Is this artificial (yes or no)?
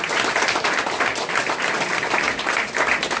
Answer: no